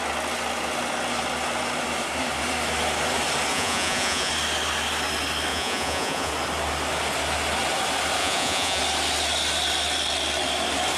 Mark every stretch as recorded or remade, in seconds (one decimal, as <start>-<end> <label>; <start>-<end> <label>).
0.0-3.5 recorded; 3.5-4.3 remade; 4.3-5.5 recorded; 5.5-6.3 remade; 6.3-8.2 recorded; 8.2-8.8 remade; 8.8-11.0 recorded